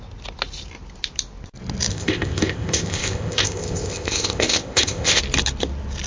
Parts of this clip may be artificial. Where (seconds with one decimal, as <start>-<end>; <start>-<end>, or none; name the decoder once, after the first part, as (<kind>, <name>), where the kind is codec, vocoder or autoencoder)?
1.9-5.2 (codec, ZipCodec)